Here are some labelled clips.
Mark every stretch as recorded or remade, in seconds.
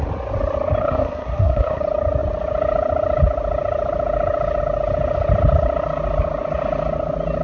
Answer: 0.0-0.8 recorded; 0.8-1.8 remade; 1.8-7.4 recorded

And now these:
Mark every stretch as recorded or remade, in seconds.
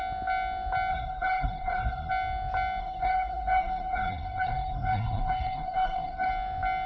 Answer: 0.0-0.9 recorded; 0.9-2.1 remade; 2.1-2.8 recorded; 2.8-6.3 remade; 6.3-6.9 recorded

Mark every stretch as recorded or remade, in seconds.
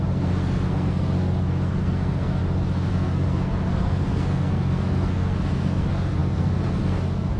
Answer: 0.0-2.4 remade; 2.4-2.9 recorded; 2.9-7.4 remade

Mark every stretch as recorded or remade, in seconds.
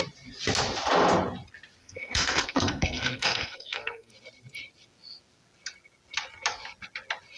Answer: 0.0-1.8 recorded; 1.8-4.1 remade; 4.1-7.4 recorded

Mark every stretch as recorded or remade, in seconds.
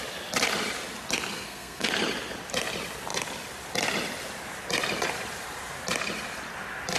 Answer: 0.0-1.3 recorded; 1.3-1.9 remade; 1.9-7.0 recorded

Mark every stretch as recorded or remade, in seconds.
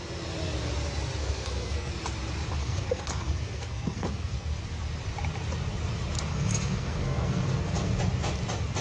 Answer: 0.0-1.2 recorded; 1.2-1.9 remade; 1.9-2.6 recorded; 2.6-4.6 remade; 4.6-6.3 recorded; 6.3-8.0 remade; 8.0-8.8 recorded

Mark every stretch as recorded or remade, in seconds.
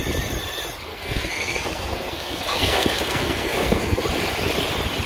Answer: 0.0-0.9 recorded; 0.9-4.0 remade; 4.0-5.1 recorded